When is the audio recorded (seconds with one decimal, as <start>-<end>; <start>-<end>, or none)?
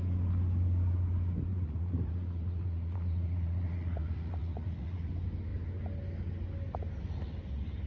0.0-1.5; 5.1-7.9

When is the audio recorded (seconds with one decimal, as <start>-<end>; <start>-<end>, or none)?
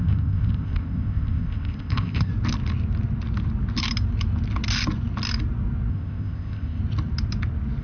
2.3-5.9; 6.8-7.8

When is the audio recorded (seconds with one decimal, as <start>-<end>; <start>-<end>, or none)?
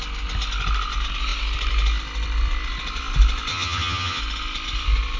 0.0-3.5; 4.2-5.2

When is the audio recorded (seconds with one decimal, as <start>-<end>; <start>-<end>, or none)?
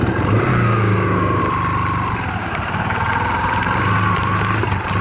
0.0-0.5; 1.4-2.4; 3.1-5.0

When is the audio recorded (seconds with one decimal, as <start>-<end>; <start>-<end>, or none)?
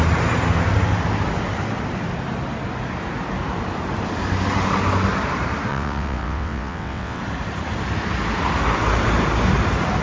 0.0-5.7; 7.2-10.0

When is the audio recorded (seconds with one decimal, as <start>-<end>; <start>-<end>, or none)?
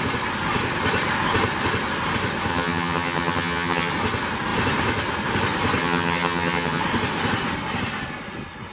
0.0-2.5; 3.9-5.8; 6.8-8.7